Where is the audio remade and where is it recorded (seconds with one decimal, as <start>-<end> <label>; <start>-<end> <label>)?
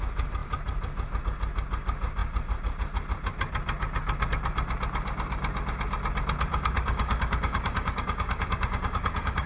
0.0-6.5 recorded; 6.5-9.5 remade